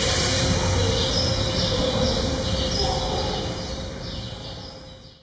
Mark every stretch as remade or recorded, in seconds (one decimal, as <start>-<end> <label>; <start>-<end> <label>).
0.0-5.2 recorded

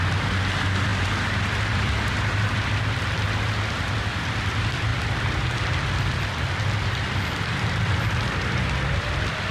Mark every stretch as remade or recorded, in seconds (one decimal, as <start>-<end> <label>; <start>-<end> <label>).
0.0-0.9 remade; 0.9-1.7 recorded; 1.7-9.5 remade